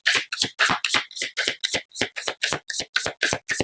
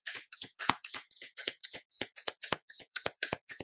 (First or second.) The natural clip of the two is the first